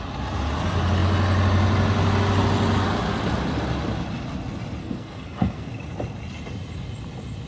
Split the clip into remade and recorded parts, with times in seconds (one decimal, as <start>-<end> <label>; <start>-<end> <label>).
0.0-4.8 recorded; 4.8-5.7 remade; 5.7-7.5 recorded